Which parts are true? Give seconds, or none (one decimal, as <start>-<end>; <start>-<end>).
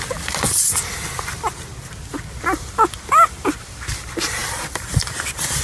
0.0-4.4